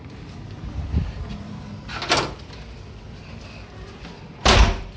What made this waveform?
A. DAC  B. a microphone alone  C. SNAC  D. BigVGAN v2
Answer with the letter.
B